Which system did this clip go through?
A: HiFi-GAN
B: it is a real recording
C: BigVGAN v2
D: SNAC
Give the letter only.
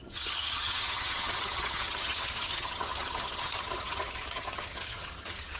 A